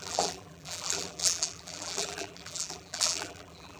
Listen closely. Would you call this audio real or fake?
fake